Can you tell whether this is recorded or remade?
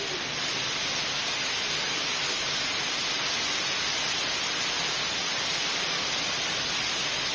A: recorded